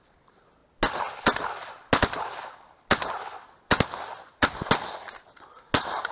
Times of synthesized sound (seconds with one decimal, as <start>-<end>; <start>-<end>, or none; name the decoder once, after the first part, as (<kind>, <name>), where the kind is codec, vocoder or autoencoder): none